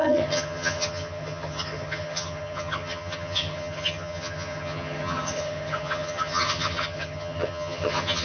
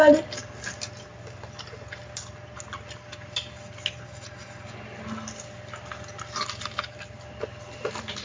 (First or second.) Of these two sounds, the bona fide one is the second